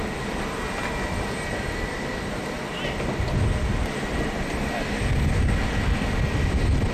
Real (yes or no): yes